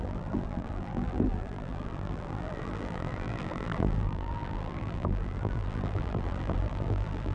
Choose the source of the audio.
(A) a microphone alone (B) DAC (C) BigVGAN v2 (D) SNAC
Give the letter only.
C